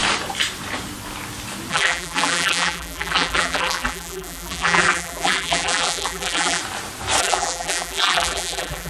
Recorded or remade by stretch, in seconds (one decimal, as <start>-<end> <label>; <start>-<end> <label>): 0.0-1.7 recorded; 1.7-6.6 remade; 6.6-7.2 recorded; 7.2-8.9 remade